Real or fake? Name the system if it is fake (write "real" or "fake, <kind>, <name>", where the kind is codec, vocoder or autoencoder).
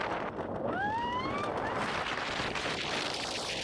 fake, vocoder, BigVGAN v2